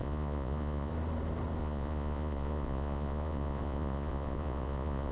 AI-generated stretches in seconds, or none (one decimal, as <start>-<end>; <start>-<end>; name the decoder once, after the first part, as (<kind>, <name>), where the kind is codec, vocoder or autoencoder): 0.0-0.9 (vocoder, Vocos); 1.6-5.1